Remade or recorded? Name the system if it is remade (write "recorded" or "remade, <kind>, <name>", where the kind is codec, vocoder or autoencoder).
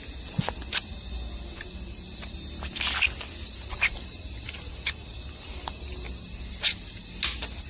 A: recorded